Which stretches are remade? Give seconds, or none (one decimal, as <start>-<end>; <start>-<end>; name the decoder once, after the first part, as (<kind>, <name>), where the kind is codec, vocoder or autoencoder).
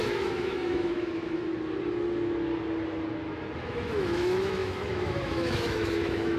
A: 0.0-1.5 (autoencoder, DAC-VAE); 3.6-6.4